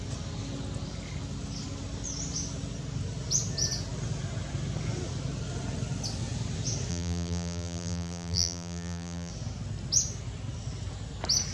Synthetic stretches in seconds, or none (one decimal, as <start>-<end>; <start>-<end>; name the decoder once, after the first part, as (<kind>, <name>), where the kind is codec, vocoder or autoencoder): 6.9-9.3 (vocoder, BigVGAN v2)